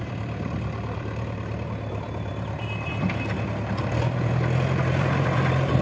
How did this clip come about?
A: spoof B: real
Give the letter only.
A